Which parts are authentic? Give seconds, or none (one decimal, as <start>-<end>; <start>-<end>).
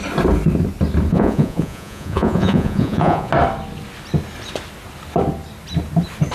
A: 0.0-1.1; 3.3-6.3